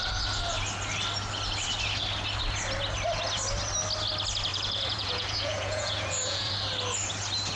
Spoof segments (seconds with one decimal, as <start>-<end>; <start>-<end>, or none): 4.5-6.5